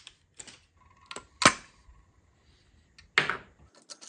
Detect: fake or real real